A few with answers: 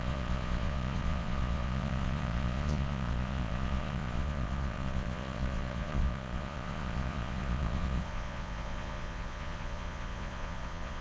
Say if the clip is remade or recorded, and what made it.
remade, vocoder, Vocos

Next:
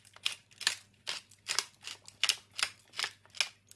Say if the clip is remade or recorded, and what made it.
recorded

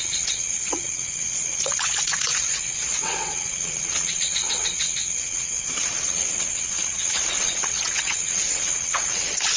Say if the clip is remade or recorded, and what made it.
remade, vocoder, WaveNeXt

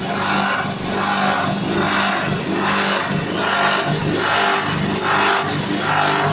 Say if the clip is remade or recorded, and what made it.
recorded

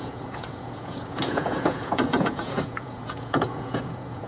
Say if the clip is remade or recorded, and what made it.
remade, vocoder, Vocos